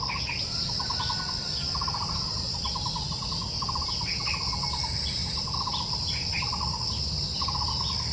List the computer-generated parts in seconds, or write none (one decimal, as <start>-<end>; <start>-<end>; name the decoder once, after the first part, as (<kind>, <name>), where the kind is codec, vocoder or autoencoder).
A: 5.2-6.4 (vocoder, BigVGAN v2)